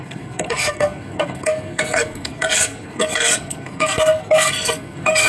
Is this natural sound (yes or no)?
no